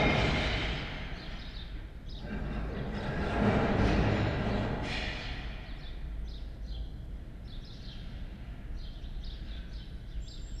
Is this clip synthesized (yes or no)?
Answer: no